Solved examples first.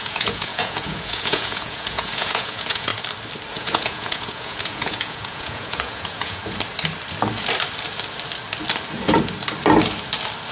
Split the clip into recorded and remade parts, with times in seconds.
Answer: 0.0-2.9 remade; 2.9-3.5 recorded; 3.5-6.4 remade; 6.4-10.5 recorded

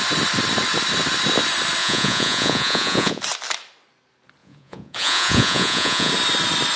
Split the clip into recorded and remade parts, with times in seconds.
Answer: 0.0-1.8 recorded; 1.8-3.2 remade; 3.2-4.4 recorded; 4.4-6.1 remade; 6.1-6.8 recorded

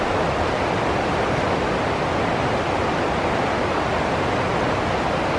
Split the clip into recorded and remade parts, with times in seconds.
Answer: 0.0-5.4 recorded

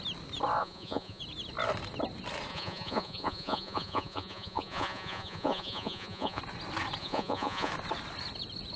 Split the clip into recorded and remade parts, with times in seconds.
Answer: 0.0-0.6 recorded; 0.6-1.2 remade; 1.2-2.5 recorded; 2.5-6.4 remade; 6.4-7.0 recorded; 7.0-7.7 remade; 7.7-8.8 recorded

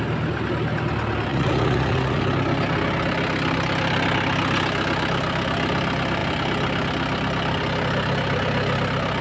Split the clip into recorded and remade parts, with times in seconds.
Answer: 0.0-1.3 recorded; 1.3-2.2 remade; 2.2-9.2 recorded